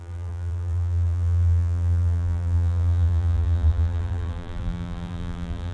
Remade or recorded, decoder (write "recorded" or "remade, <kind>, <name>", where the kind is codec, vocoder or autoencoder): remade, vocoder, BigVGAN v2